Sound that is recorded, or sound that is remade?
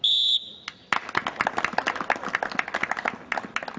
recorded